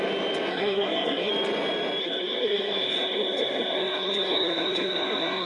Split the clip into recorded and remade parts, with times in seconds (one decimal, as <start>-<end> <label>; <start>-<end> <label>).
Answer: 0.0-0.5 recorded; 0.5-1.3 remade; 1.3-2.0 recorded; 2.0-5.5 remade